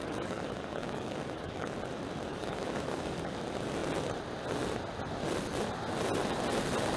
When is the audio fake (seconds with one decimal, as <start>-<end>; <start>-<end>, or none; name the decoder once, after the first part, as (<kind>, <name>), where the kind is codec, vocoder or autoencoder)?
0.0-1.7 (codec, DAC); 2.3-3.4